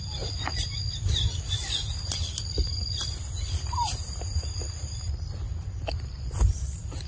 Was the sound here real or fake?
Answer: real